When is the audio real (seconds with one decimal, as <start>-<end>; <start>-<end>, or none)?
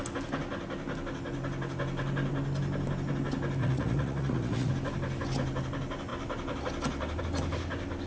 0.0-3.6; 4.7-8.1